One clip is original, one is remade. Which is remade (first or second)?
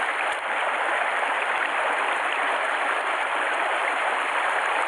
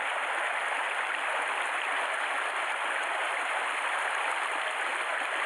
first